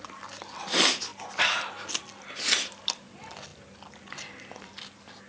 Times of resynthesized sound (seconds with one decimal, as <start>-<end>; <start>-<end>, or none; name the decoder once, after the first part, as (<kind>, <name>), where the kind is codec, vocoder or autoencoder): none